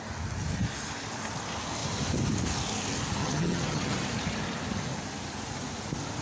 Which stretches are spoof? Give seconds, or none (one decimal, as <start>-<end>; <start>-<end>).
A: 3.2-4.0